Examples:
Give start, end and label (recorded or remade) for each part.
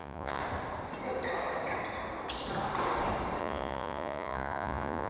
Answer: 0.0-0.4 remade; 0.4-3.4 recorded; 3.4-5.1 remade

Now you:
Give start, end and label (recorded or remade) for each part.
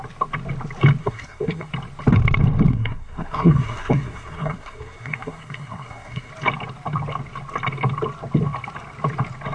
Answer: 0.0-1.0 recorded; 1.0-1.7 remade; 1.7-2.7 recorded; 2.7-6.3 remade; 6.3-9.5 recorded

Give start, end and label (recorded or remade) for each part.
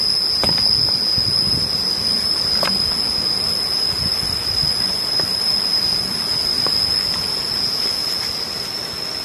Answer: 0.0-9.2 recorded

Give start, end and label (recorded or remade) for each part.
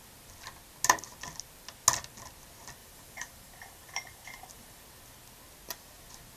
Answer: 0.0-2.8 recorded; 2.8-4.8 remade; 4.8-6.4 recorded